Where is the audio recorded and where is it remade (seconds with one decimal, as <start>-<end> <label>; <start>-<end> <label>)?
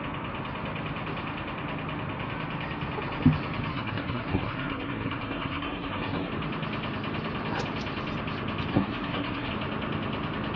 0.0-3.7 recorded; 3.7-6.3 remade; 6.3-8.7 recorded; 8.7-9.5 remade; 9.5-10.6 recorded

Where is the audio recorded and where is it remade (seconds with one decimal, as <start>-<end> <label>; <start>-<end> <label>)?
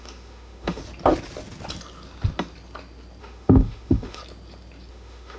0.0-0.8 remade; 0.8-3.2 recorded; 3.2-4.2 remade; 4.2-4.9 recorded; 4.9-5.4 remade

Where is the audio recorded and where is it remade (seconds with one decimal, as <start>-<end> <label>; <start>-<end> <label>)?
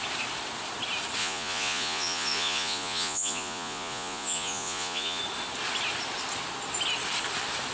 0.0-1.2 recorded; 1.2-5.2 remade; 5.2-7.7 recorded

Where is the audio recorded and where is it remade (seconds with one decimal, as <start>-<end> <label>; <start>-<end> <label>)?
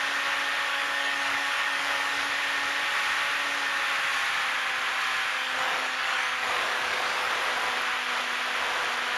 0.0-0.7 recorded; 0.7-2.3 remade; 2.3-5.3 recorded; 5.3-7.3 remade; 7.3-9.2 recorded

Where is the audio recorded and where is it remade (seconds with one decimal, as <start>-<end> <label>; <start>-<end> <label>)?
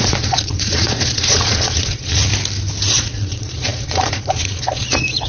0.0-2.3 remade; 2.3-2.9 recorded; 2.9-5.3 remade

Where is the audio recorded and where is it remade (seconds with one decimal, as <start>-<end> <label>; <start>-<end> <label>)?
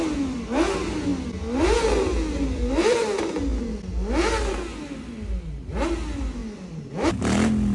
0.0-7.7 recorded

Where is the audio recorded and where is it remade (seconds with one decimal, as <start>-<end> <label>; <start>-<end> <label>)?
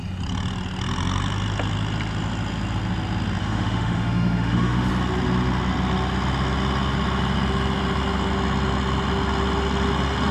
0.0-3.4 recorded; 3.4-4.9 remade; 4.9-10.3 recorded